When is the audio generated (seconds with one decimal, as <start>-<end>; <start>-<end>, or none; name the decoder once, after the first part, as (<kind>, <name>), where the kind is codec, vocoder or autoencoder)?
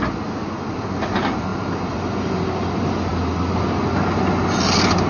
none